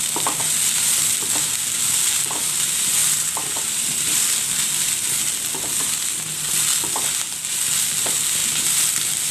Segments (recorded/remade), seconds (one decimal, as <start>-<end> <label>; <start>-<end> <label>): 0.0-3.0 recorded; 3.0-6.5 remade; 6.5-9.3 recorded